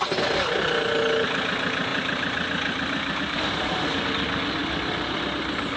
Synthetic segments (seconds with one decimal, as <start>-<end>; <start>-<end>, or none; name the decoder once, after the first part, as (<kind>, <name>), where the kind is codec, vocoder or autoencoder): 1.9-4.1 (vocoder, BigVGAN v2)